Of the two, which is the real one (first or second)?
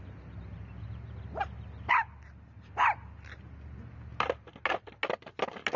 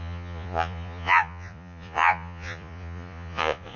first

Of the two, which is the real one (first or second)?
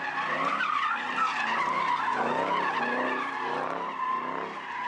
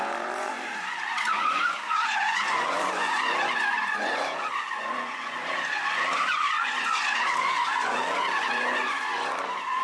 first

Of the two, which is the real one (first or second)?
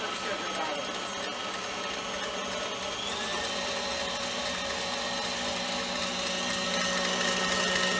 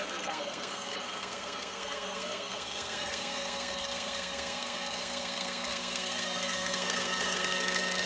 first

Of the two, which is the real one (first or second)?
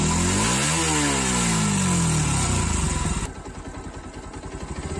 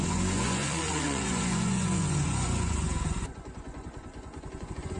first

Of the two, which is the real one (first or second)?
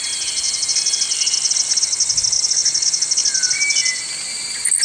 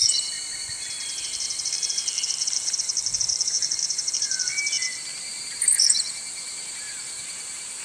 first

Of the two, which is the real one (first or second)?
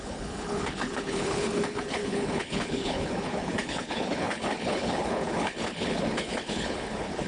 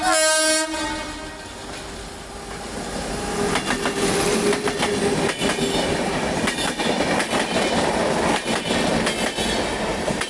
second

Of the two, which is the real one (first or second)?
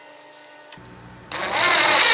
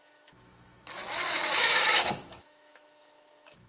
first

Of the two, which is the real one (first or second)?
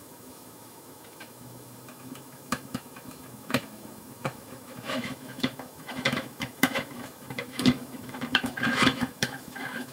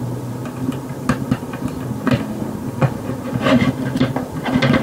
second